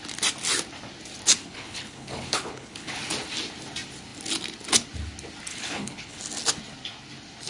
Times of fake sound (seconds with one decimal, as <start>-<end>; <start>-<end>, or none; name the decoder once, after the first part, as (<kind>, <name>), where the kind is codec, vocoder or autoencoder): 1.4-3.0 (codec, HILCodec); 5.5-6.2